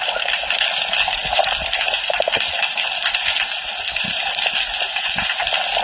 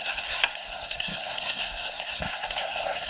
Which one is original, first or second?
first